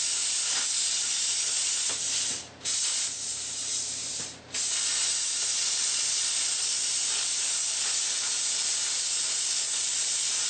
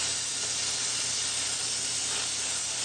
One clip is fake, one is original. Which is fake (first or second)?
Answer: first